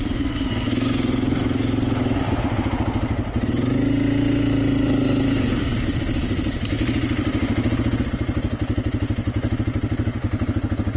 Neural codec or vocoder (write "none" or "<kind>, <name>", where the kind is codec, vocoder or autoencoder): none